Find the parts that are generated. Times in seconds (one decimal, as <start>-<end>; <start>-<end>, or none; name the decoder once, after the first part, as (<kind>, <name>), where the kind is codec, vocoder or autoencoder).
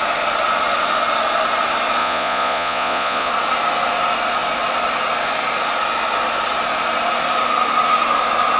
2.0-3.3 (vocoder, Vocos)